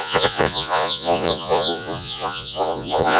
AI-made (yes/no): yes